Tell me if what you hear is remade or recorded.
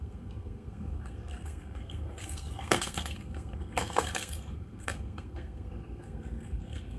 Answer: remade